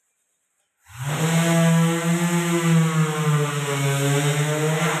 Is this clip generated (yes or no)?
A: no